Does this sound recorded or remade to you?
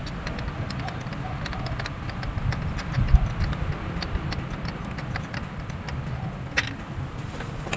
recorded